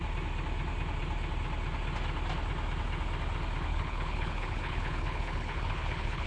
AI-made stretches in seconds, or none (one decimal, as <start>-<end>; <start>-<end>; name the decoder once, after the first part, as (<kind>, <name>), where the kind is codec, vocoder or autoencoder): 3.7-6.3 (codec, HILCodec)